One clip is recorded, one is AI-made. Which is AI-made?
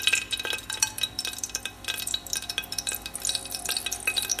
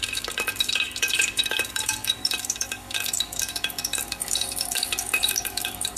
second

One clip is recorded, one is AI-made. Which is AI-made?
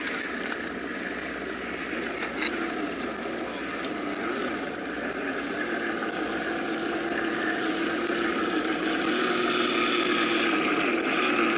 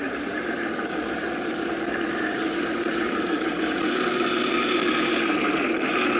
second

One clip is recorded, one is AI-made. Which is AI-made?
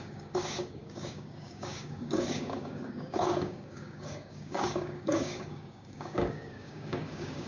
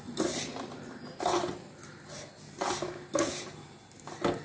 first